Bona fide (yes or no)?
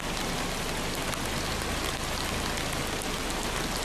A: yes